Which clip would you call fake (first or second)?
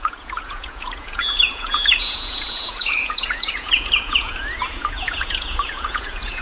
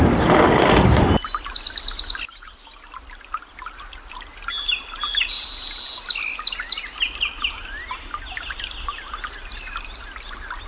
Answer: first